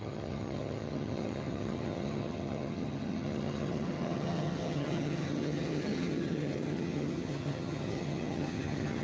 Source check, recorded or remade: remade